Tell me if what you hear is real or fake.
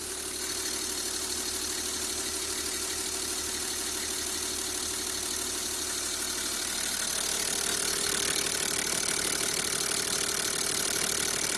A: real